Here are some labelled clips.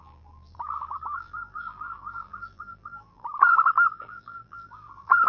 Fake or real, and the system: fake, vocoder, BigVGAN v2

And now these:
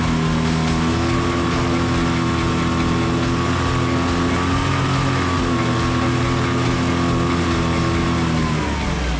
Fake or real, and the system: real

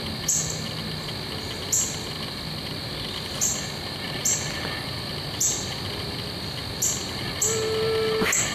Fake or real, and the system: real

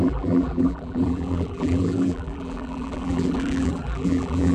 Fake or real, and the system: fake, vocoder, BigVGAN v2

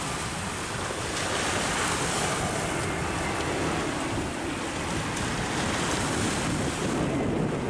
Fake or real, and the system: real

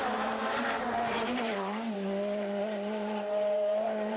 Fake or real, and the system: fake, vocoder, BigVGAN v2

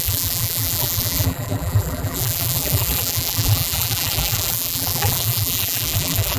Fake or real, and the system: fake, vocoder, BigVGAN v2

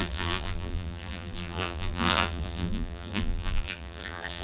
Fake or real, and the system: fake, vocoder, BigVGAN v2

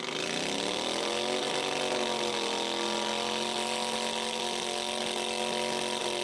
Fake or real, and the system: real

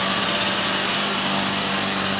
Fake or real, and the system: fake, vocoder, BigVGAN v2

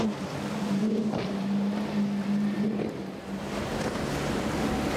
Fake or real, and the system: real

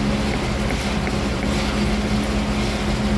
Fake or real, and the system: real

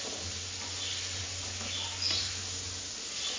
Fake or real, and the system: real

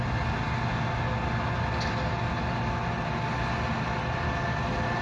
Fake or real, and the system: real